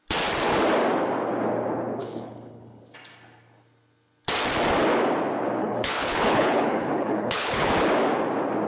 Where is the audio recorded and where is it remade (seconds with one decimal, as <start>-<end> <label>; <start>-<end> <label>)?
0.0-2.0 recorded; 2.0-2.8 remade; 2.8-5.6 recorded; 5.6-7.7 remade; 7.7-8.7 recorded